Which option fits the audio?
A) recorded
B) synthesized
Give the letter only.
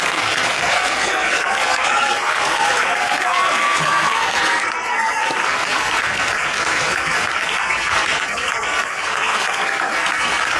B